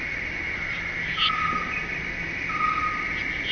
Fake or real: real